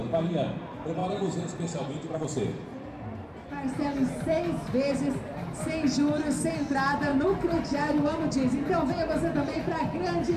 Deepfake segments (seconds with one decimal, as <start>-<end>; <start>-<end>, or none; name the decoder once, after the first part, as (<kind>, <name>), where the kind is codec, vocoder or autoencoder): 0.0-0.6 (vocoder, BigVGAN v2); 1.0-2.1; 7.1-8.2